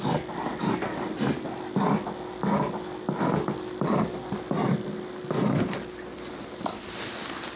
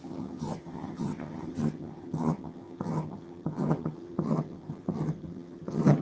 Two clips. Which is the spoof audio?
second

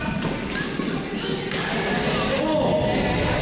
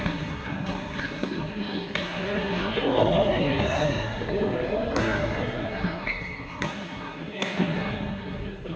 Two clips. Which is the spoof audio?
second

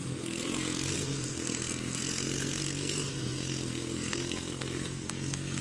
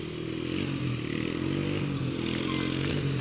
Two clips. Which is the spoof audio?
first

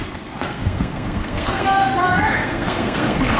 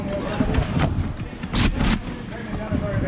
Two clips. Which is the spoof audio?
first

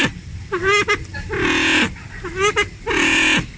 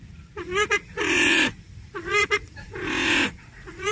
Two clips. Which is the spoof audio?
second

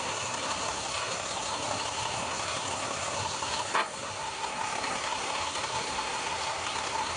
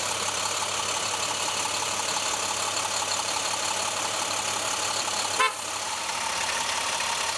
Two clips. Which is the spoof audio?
first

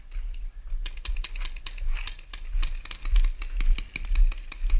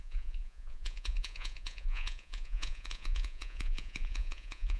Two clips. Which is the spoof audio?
second